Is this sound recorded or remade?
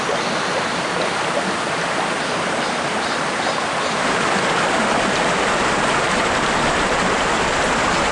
recorded